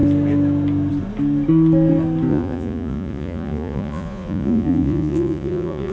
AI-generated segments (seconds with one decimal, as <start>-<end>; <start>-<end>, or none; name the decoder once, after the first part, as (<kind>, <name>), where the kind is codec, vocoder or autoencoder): 2.3-5.9 (vocoder, Vocos)

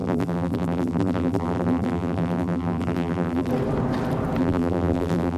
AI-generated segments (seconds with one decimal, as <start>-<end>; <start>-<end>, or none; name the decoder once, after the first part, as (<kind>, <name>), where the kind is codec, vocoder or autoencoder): 0.0-3.5 (vocoder, BigVGAN v2); 4.4-5.4

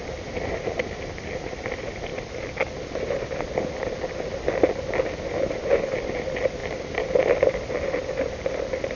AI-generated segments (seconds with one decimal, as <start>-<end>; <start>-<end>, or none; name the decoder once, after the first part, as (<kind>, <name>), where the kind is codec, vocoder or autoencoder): none

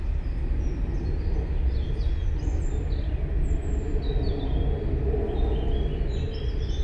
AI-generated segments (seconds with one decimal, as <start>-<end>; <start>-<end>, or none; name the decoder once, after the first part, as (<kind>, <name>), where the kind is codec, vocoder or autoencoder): none